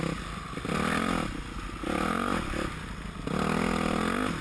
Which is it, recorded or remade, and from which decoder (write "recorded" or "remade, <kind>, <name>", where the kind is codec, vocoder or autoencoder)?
recorded